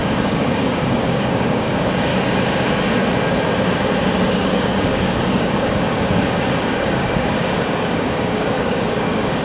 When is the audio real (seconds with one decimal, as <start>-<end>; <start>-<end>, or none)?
2.1-4.3